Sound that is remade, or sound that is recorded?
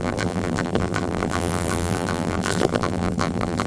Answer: remade